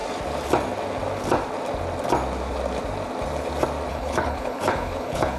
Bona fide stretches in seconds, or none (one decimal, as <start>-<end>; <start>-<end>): 0.0-3.9